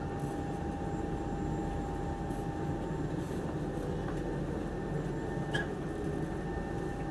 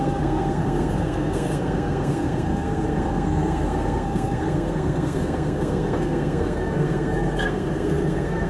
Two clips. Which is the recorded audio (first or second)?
first